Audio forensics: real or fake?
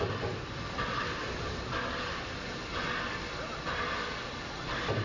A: real